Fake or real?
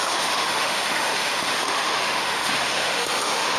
fake